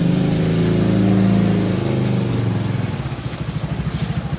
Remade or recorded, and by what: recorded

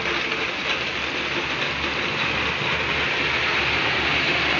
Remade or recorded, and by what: recorded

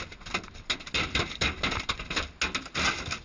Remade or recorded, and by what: recorded